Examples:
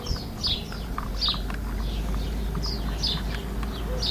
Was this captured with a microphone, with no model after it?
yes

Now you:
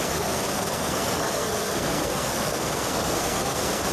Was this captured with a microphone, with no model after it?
no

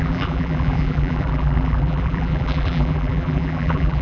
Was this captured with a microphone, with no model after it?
no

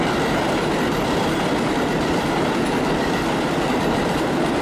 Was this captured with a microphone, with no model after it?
yes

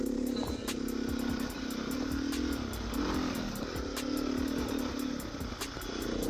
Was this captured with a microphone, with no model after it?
yes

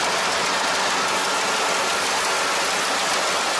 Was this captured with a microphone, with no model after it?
yes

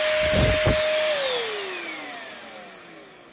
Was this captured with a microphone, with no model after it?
yes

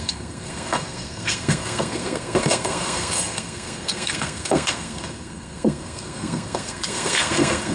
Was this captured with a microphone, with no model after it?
no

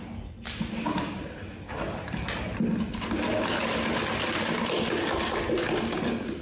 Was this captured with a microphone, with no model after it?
yes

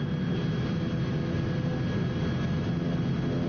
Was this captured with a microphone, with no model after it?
yes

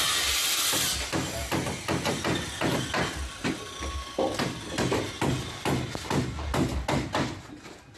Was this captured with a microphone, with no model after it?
yes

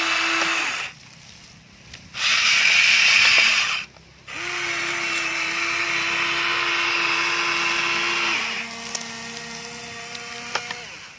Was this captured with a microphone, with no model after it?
yes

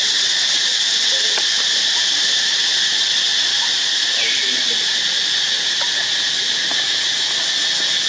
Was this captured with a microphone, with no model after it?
yes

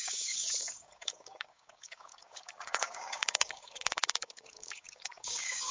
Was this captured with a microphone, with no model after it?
no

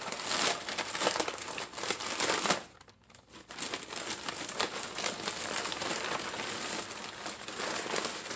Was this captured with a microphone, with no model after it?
yes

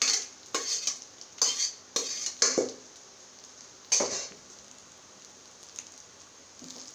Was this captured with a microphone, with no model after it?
yes